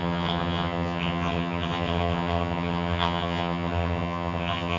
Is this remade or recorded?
remade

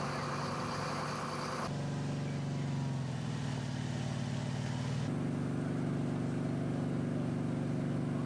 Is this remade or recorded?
recorded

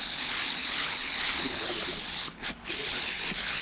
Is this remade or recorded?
remade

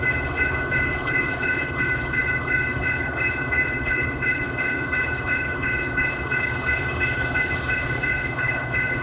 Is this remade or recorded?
remade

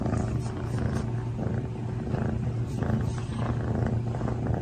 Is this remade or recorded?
recorded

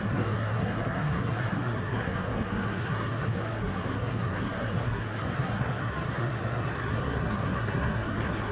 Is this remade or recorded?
remade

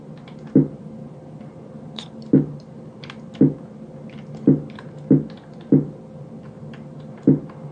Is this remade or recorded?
recorded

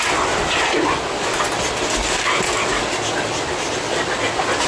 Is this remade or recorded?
recorded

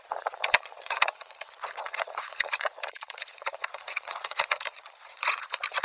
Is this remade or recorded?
remade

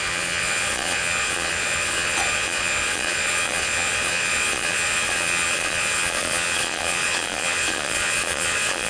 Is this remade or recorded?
remade